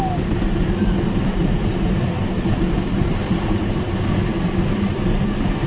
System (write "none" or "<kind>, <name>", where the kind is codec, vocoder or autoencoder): none